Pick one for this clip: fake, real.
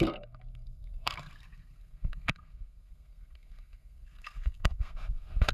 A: fake